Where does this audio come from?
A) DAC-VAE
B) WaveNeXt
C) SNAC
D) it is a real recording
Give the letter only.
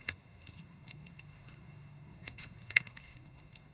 C